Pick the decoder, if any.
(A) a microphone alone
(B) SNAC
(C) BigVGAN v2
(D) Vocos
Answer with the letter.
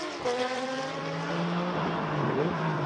C